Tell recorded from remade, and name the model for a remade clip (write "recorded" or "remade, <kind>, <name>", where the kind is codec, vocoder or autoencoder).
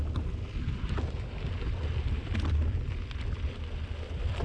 recorded